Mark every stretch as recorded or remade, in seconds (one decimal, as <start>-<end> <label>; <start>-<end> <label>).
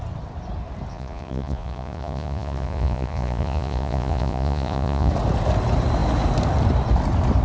0.0-0.9 recorded; 0.9-5.1 remade; 5.1-7.4 recorded